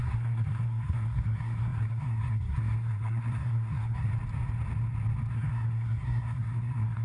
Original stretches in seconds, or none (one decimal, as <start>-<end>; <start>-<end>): 4.1-5.3